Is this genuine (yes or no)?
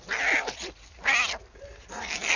yes